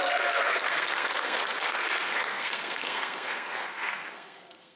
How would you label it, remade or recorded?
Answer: remade